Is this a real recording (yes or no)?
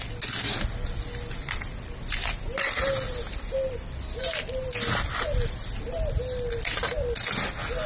yes